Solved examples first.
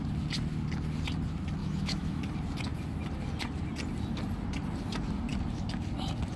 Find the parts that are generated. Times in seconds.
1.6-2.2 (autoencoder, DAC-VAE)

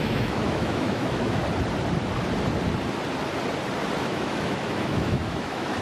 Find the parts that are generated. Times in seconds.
0.0-1.4 (autoencoder, DAC-VAE); 4.0-5.8

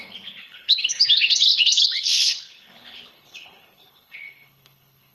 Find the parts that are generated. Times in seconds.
0.0-5.1 (codec, HILCodec)

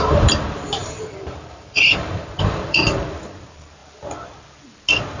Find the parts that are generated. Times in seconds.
0.0-3.8 (vocoder, BigVGAN v2)

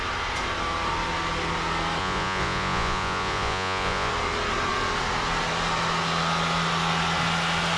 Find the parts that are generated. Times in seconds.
2.0-4.1 (vocoder, Vocos)

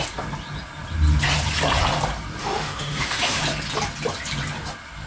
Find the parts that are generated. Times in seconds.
2.4-3.4 (autoencoder, DAC-VAE)